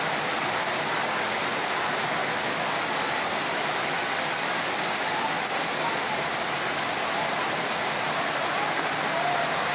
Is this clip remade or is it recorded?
recorded